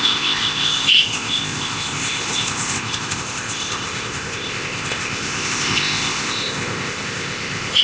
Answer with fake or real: fake